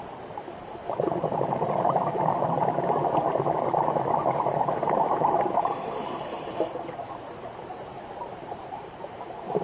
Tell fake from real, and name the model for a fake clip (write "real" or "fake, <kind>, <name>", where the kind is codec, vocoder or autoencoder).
fake, vocoder, BigVGAN v2